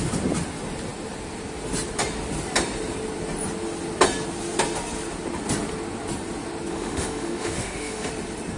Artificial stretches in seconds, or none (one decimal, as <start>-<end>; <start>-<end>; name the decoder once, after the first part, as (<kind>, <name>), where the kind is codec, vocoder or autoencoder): 6.7-8.1 (autoencoder, DAC-VAE)